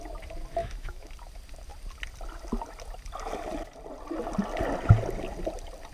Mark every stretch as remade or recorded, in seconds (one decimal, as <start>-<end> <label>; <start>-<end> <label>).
0.0-0.6 recorded; 0.6-1.1 remade; 1.1-5.9 recorded